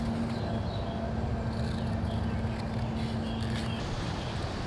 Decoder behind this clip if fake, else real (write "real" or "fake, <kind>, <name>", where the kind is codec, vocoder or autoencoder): real